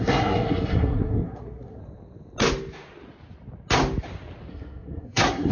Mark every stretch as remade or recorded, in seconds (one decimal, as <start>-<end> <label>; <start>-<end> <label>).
0.0-1.8 remade; 1.8-4.5 recorded; 4.5-5.5 remade